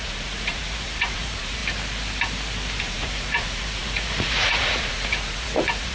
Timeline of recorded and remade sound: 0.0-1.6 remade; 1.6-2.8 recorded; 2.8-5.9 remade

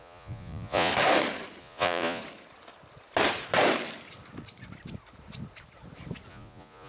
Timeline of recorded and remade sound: 0.0-0.9 remade; 0.9-1.6 recorded; 1.6-2.2 remade; 2.2-6.3 recorded; 6.3-6.9 remade

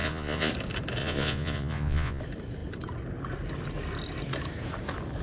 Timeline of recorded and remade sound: 0.0-0.5 remade; 0.5-1.0 recorded; 1.0-2.2 remade; 2.2-5.2 recorded

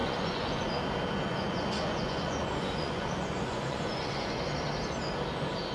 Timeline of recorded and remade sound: 0.0-0.7 remade; 0.7-1.3 recorded; 1.3-4.4 remade; 4.4-5.7 recorded

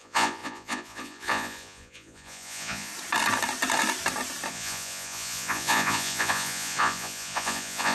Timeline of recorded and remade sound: 0.0-2.9 remade; 2.9-4.5 recorded; 4.5-7.9 remade

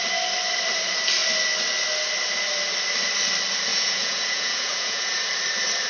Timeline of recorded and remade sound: 0.0-3.7 recorded; 3.7-5.2 remade; 5.2-5.9 recorded

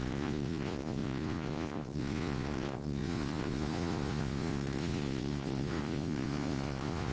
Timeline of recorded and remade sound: 0.0-7.1 remade

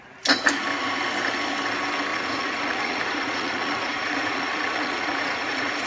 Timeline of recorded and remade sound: 0.0-2.1 recorded; 2.1-5.9 remade